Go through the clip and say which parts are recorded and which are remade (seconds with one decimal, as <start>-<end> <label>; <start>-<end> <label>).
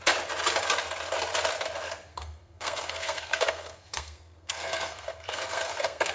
0.0-2.1 recorded; 2.1-6.1 remade